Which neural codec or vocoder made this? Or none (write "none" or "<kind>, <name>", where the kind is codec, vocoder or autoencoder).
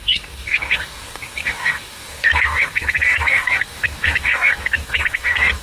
codec, DAC